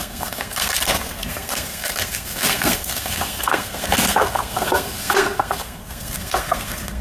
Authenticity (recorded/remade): remade